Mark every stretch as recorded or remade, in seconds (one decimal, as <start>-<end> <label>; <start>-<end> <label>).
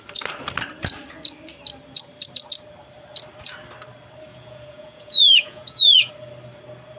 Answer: 0.0-4.3 recorded; 4.3-6.1 remade; 6.1-7.0 recorded